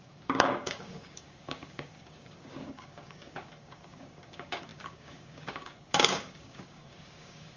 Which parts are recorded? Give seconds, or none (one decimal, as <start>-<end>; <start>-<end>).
none